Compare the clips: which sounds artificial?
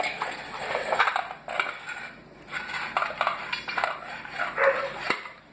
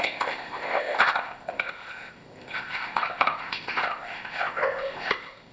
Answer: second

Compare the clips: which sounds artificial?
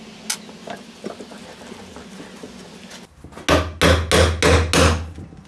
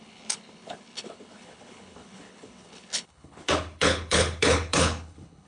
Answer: second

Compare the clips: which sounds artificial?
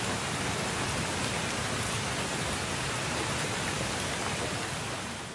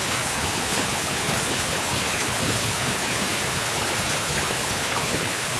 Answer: second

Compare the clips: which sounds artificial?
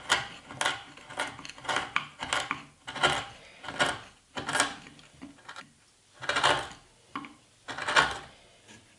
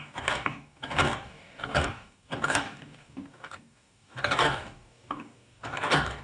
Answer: second